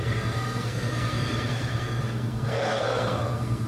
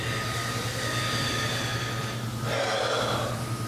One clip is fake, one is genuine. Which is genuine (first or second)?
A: second